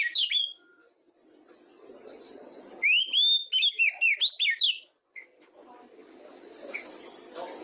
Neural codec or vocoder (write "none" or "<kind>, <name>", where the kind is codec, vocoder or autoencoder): none